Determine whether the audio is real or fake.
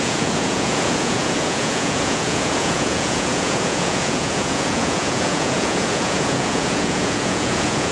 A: fake